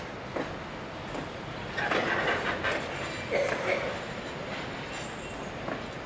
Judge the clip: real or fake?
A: real